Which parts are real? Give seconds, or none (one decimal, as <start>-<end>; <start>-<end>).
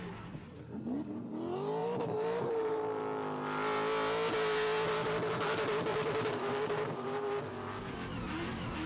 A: 0.0-1.8; 3.0-5.9; 7.4-8.9